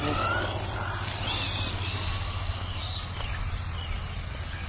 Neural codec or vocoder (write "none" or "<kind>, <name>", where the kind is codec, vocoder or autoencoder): none